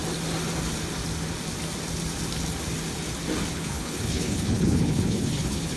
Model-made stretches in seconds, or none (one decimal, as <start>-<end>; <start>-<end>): 3.5-5.8